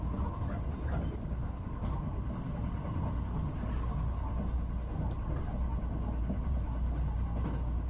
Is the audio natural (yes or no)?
yes